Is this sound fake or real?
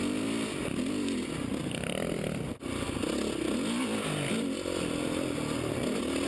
real